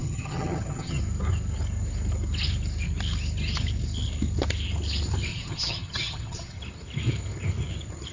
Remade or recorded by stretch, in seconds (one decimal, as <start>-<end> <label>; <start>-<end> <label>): 0.0-1.0 remade; 1.0-5.3 recorded; 5.3-6.6 remade; 6.6-8.1 recorded